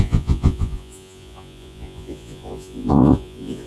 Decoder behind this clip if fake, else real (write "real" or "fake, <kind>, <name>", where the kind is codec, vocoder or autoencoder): fake, vocoder, Vocos